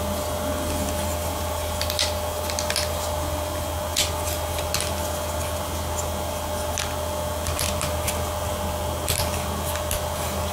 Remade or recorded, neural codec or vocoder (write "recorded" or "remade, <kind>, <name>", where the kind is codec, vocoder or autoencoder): recorded